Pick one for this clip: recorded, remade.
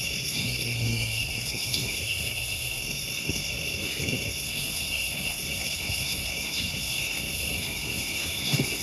remade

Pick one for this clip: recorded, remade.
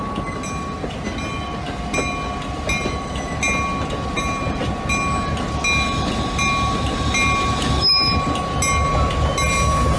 recorded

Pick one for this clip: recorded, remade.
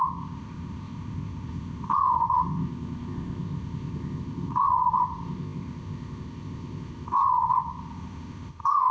remade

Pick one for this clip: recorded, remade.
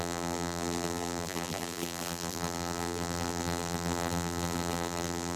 remade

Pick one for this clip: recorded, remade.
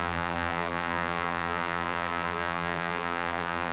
remade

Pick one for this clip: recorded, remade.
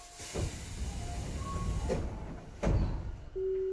recorded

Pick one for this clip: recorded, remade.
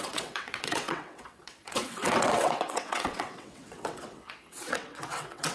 remade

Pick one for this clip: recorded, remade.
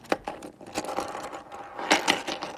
recorded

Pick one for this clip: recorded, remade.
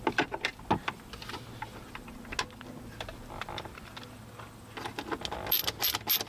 recorded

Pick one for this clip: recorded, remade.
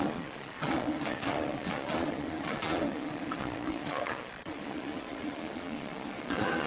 remade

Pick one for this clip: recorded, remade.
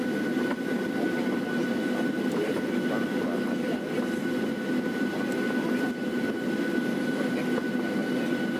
recorded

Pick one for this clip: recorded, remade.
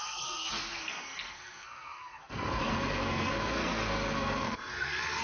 remade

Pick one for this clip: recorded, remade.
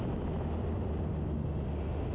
recorded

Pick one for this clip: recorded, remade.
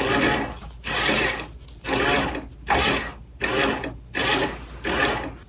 recorded